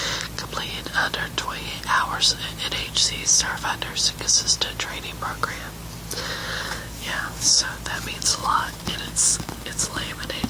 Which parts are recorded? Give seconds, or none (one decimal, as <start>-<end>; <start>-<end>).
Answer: 0.0-2.8; 3.6-6.4; 7.7-8.3